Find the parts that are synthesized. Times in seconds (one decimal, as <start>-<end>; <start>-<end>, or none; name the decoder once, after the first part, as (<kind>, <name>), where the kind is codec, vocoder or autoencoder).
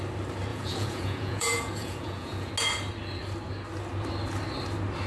0.5-2.5 (vocoder, Vocos)